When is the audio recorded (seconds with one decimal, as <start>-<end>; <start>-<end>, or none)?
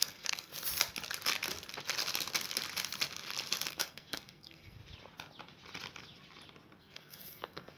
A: 0.5-3.7; 4.8-6.8